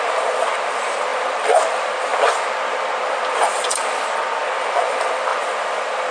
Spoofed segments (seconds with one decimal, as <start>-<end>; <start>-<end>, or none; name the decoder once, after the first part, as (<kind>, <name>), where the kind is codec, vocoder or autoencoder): 0.0-2.1 (vocoder, BigVGAN v2); 3.0-6.1